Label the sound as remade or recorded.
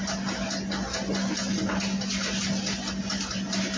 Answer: recorded